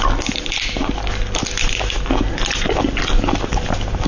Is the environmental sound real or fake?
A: real